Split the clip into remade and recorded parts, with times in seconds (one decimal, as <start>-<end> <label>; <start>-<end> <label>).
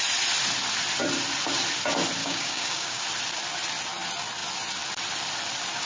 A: 0.0-2.2 recorded; 2.2-3.0 remade; 3.0-5.8 recorded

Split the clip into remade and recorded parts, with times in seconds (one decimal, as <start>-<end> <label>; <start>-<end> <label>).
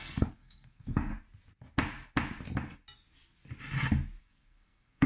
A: 0.0-1.1 remade; 1.1-4.2 recorded; 4.2-5.1 remade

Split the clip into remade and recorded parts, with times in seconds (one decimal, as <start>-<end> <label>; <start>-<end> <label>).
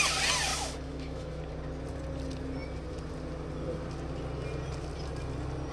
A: 0.0-0.5 recorded; 0.5-1.4 remade; 1.4-5.7 recorded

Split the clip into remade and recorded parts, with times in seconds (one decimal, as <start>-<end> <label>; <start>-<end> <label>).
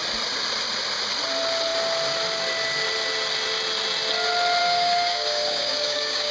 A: 0.0-4.6 recorded; 4.6-6.3 remade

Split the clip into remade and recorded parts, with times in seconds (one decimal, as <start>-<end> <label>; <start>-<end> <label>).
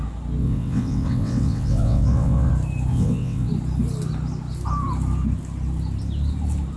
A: 0.0-0.4 recorded; 0.4-2.5 remade; 2.5-2.9 recorded; 2.9-3.5 remade; 3.5-6.8 recorded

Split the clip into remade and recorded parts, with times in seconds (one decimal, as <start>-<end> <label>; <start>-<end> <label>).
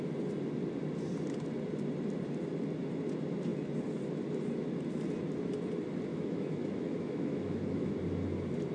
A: 0.0-6.1 recorded; 6.1-7.9 remade; 7.9-8.7 recorded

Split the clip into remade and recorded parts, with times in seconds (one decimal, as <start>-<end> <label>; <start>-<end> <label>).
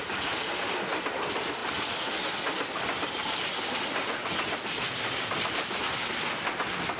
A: 0.0-7.0 recorded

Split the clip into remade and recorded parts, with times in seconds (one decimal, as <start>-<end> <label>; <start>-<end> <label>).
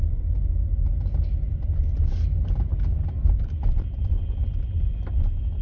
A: 0.0-1.5 recorded; 1.5-2.1 remade; 2.1-2.7 recorded; 2.7-4.2 remade; 4.2-5.6 recorded